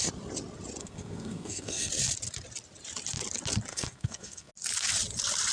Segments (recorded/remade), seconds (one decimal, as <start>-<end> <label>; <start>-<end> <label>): 0.0-0.8 recorded; 0.8-1.9 remade; 1.9-3.7 recorded; 3.7-4.5 remade; 4.5-5.5 recorded